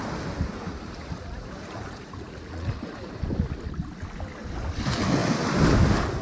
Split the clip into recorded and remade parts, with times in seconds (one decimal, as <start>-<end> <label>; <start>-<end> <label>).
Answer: 0.0-0.7 recorded; 0.7-3.2 remade; 3.2-6.2 recorded